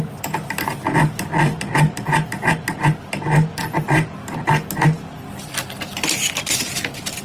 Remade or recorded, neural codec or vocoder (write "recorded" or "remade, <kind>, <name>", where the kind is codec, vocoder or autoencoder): recorded